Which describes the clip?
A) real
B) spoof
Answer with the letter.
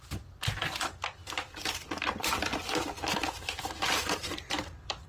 A